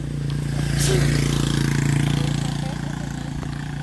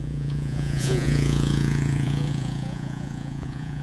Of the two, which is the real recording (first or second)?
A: first